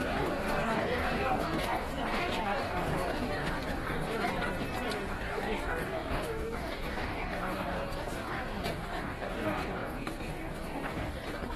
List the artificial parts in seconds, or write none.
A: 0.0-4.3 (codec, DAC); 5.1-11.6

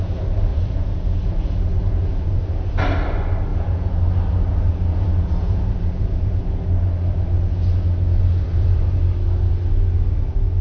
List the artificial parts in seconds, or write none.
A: 0.5-2.4 (vocoder, Vocos); 3.5-4.1; 4.5-6.4; 8.5-9.0

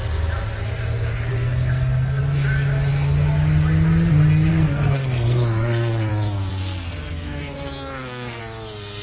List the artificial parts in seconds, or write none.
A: 1.3-2.2 (codec, SNAC); 4.5-6.1; 6.5-8.4